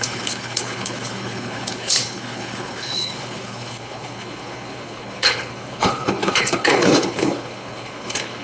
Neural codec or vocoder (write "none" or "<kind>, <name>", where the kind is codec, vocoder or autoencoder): codec, HILCodec